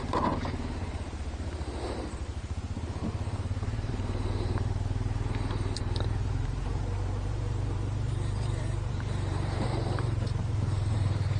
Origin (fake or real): fake